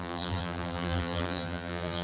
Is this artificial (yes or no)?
yes